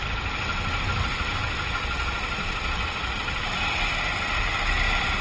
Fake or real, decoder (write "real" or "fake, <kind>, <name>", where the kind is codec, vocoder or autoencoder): real